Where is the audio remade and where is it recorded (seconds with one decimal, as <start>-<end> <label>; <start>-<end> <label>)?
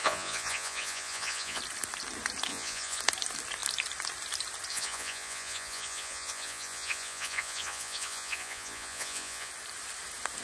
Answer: 0.0-1.6 remade; 1.6-2.5 recorded; 2.5-3.0 remade; 3.0-4.7 recorded; 4.7-9.5 remade; 9.5-10.4 recorded